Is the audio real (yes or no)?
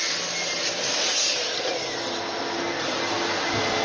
yes